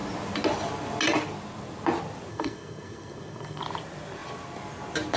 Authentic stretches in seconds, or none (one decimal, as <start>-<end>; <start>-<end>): 0.0-2.3; 3.6-5.2